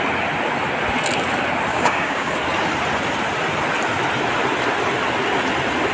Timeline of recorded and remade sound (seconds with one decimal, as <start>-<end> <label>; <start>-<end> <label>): 0.0-1.7 recorded; 1.7-2.3 remade; 2.3-5.9 recorded